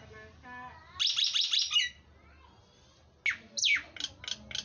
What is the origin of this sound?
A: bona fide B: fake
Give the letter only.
A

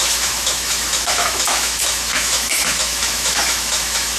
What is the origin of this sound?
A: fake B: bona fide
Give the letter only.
A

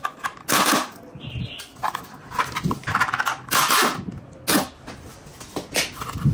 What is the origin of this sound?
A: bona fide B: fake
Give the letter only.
A